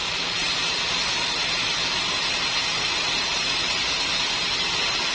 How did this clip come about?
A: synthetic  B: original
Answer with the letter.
B